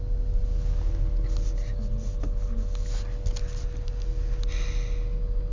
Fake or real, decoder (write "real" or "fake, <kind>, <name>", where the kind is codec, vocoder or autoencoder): real